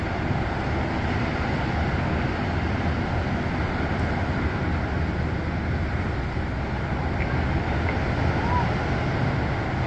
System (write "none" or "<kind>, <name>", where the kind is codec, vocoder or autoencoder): none